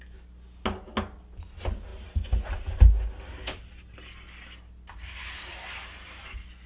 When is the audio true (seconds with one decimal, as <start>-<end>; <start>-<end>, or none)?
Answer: 0.0-6.7